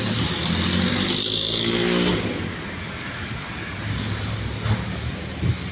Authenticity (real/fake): real